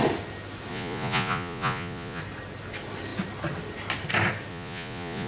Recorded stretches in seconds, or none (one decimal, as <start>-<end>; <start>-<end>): 0.0-0.7; 2.2-4.5